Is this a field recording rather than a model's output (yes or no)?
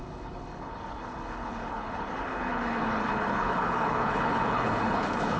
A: no